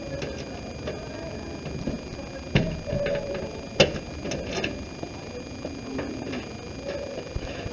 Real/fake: real